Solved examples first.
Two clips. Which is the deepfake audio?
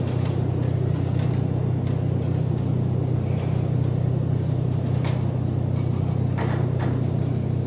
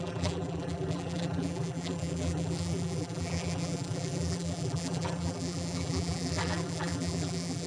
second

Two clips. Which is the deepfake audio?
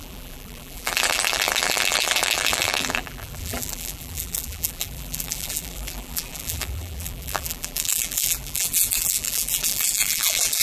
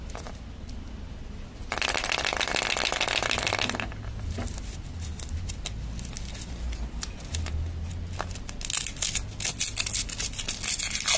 first